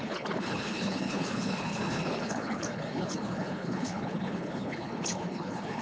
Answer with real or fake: fake